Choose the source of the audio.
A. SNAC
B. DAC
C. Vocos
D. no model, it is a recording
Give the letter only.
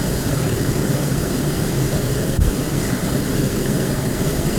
A